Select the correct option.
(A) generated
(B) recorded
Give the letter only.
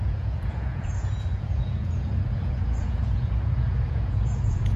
A